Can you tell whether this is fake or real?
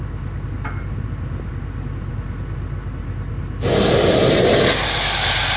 real